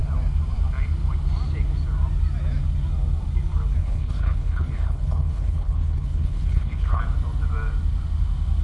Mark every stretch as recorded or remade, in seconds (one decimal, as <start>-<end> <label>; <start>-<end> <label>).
0.0-3.8 recorded; 3.8-7.0 remade; 7.0-8.6 recorded